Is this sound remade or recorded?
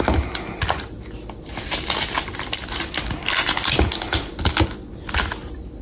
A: recorded